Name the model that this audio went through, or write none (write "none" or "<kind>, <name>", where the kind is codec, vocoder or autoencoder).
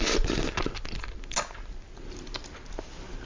none